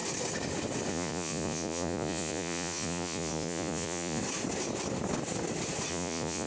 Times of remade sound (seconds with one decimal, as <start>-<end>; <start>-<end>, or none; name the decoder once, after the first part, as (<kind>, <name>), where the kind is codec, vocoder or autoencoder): 0.9-4.2 (vocoder, Vocos); 5.9-6.5